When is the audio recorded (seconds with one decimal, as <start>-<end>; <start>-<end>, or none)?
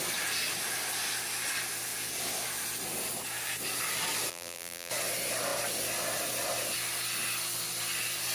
0.0-4.3; 4.9-8.3